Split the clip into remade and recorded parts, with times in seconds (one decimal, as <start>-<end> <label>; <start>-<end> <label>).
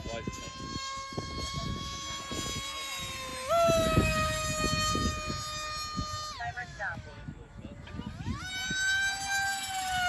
0.0-0.7 recorded; 0.7-2.2 remade; 2.2-6.6 recorded; 6.6-7.6 remade; 7.6-10.1 recorded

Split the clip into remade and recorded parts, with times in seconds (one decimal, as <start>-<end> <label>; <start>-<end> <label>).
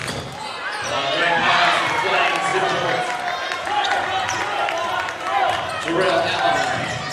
0.0-7.1 recorded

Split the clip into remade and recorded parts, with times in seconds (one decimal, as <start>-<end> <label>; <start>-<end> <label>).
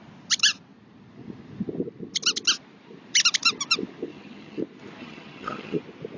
0.0-4.1 recorded; 4.1-4.6 remade; 4.6-5.0 recorded; 5.0-5.8 remade; 5.8-6.2 recorded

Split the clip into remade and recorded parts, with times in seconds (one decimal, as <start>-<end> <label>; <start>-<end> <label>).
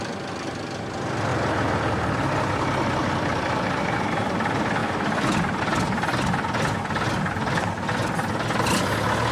0.0-9.3 recorded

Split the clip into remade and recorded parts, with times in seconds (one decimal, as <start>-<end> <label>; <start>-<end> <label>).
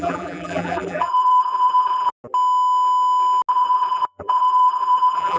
0.0-2.1 remade; 2.1-3.5 recorded; 3.5-5.4 remade